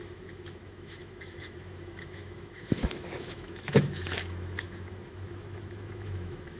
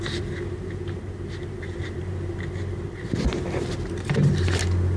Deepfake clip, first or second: first